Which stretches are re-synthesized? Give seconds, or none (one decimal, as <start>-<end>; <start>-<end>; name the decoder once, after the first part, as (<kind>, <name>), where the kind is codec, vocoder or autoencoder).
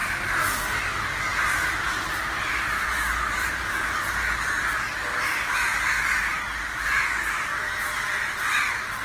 1.3-4.1 (vocoder, BigVGAN v2)